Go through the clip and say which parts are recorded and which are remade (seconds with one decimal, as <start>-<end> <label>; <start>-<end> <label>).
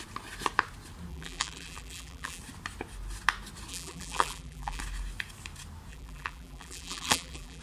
0.0-1.1 recorded; 1.1-2.4 remade; 2.4-3.7 recorded; 3.7-4.8 remade; 4.8-5.9 recorded; 5.9-7.6 remade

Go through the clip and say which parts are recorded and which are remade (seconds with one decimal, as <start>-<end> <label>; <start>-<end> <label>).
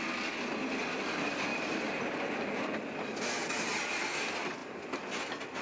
0.0-1.5 recorded; 1.5-3.6 remade; 3.6-4.6 recorded; 4.6-5.6 remade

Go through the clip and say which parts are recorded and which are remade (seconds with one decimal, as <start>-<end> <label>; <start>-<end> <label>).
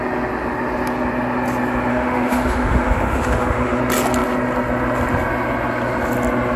0.0-1.9 recorded; 1.9-3.8 remade; 3.8-6.6 recorded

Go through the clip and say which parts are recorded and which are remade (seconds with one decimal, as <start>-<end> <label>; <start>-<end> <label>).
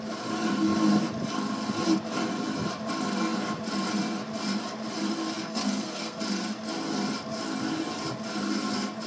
0.0-5.2 recorded; 5.2-6.2 remade; 6.2-9.1 recorded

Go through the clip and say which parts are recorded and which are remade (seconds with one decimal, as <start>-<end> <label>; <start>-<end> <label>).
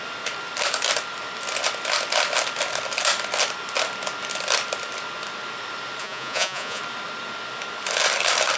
0.0-6.0 recorded; 6.0-6.8 remade; 6.8-8.6 recorded